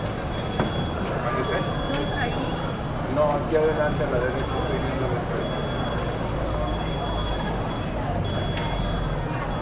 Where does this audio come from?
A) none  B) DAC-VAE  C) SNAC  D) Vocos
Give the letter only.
A